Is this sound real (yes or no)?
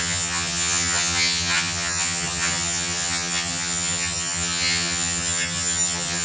no